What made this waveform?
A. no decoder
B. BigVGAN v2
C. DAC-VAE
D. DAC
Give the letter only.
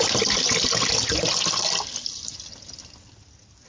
A